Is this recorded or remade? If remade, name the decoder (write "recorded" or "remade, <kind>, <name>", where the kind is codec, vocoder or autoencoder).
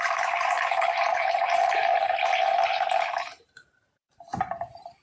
remade, vocoder, BigVGAN v2